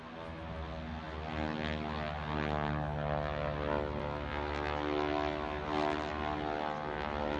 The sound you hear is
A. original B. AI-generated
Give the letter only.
A